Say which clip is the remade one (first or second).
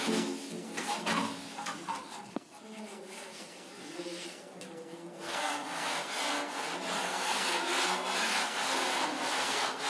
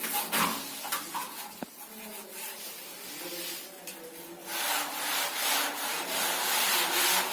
first